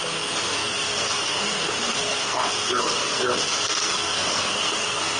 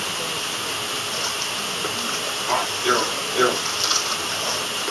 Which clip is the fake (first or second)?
first